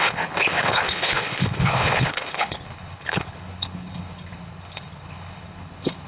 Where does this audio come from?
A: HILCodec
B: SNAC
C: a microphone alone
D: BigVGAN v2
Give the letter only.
A